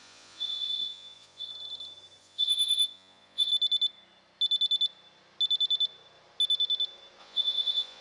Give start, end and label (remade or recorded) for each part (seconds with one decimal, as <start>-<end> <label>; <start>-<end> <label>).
0.0-1.5 remade; 1.5-2.2 recorded; 2.2-3.5 remade; 3.5-7.2 recorded; 7.2-8.0 remade